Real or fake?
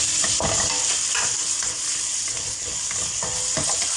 real